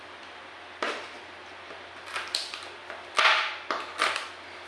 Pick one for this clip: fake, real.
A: real